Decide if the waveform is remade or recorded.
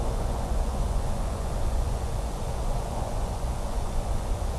remade